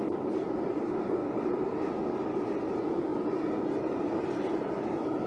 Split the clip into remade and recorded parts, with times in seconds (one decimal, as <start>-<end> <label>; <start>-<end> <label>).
0.0-1.2 recorded; 1.2-1.9 remade; 1.9-5.3 recorded